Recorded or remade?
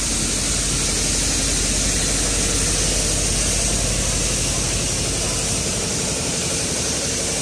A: recorded